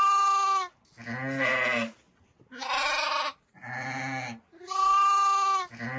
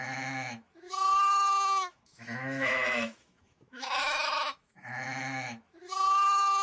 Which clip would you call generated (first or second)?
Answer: second